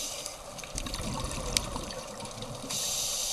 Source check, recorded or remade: remade